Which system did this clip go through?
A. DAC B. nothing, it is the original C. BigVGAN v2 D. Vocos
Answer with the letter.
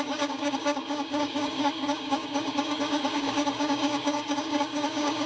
A